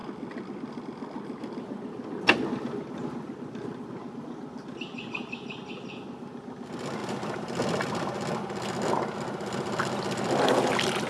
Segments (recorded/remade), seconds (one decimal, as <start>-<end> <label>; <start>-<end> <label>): 0.0-0.8 remade; 0.8-7.0 recorded; 7.0-8.4 remade; 8.4-11.1 recorded